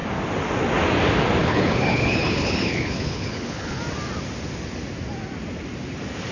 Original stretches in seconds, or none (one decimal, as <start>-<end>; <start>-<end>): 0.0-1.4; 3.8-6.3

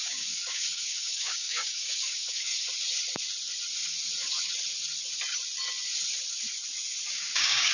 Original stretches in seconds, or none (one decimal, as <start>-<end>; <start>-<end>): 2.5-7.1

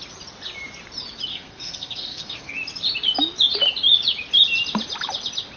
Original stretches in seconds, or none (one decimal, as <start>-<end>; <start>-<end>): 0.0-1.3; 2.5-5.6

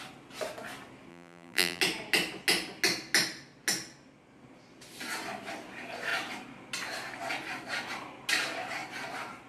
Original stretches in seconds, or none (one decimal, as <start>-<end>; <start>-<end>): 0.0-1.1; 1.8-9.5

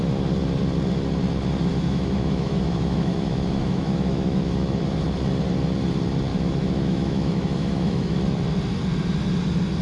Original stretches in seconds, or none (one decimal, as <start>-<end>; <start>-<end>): 0.0-1.7; 4.8-6.3; 8.2-9.8

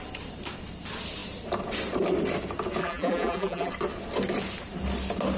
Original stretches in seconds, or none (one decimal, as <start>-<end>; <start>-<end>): 0.0-2.8; 3.7-5.4